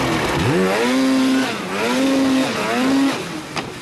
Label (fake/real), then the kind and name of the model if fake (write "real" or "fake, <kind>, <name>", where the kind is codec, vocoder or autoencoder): real